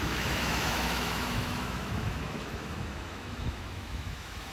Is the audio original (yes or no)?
no